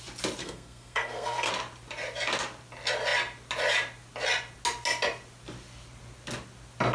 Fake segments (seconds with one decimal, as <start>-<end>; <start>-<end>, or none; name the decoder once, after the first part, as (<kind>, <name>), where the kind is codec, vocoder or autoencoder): 0.4-1.5 (codec, SNAC)